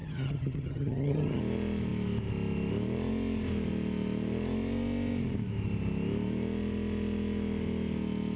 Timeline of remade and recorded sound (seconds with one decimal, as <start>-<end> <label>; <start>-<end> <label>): 0.0-1.4 remade; 1.4-8.4 recorded